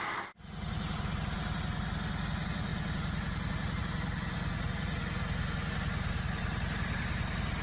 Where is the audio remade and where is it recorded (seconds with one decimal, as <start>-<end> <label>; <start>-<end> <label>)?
0.0-7.6 recorded